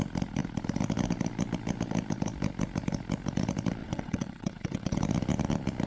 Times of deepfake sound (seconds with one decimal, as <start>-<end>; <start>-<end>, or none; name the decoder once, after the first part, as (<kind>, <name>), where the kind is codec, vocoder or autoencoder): 3.8-5.0 (vocoder, WaveNeXt)